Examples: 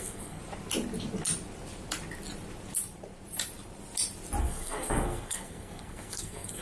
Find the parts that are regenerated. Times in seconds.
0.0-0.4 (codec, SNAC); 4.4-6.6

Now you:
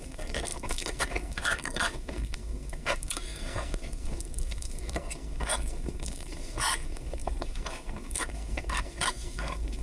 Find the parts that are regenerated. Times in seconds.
0.0-9.8 (codec, SNAC)

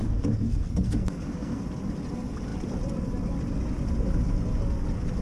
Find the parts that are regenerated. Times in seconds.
0.0-1.6 (codec, SNAC)

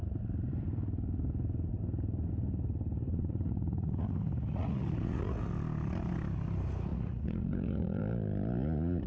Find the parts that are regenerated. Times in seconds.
3.1-5.5 (vocoder, Vocos); 6.9-8.0

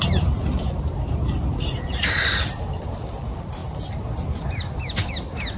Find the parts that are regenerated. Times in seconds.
1.5-2.1 (vocoder, Vocos)